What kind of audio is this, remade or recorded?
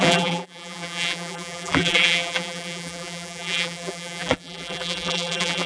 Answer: remade